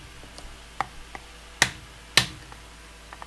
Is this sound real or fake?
real